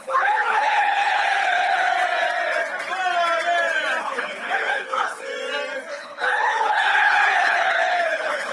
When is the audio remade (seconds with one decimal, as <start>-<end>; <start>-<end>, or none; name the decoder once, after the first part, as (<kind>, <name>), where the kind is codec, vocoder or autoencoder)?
0.0-1.9 (codec, HILCodec); 4.0-5.3; 5.9-8.5